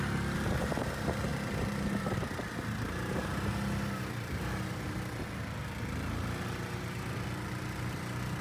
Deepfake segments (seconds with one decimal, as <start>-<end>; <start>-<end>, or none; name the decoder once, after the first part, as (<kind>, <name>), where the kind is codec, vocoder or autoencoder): none